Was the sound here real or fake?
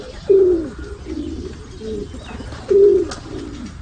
real